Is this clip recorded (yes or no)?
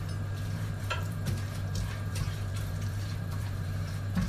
no